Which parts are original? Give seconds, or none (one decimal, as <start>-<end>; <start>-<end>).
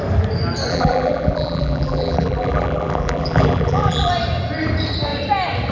0.0-0.7; 4.1-5.7